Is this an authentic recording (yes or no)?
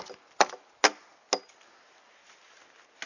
yes